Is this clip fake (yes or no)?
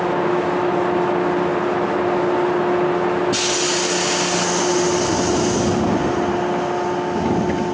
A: no